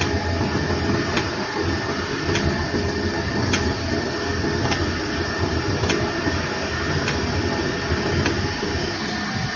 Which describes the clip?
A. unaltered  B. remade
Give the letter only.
A